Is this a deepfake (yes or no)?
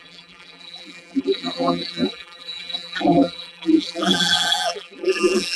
yes